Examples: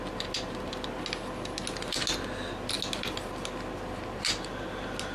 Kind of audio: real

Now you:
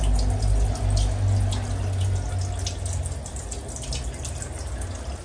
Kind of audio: real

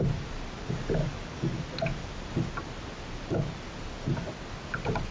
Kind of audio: real